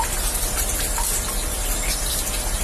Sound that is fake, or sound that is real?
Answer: real